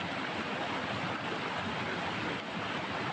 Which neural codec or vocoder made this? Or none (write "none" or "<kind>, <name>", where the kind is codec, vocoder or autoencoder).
none